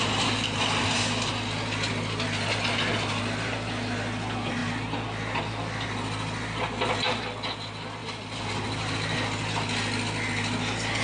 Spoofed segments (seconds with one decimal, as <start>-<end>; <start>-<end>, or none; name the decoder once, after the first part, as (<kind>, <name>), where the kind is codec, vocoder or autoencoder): none